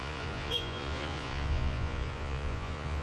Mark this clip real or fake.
fake